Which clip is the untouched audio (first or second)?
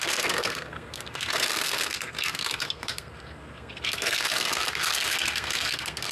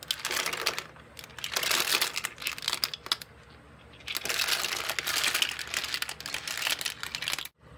second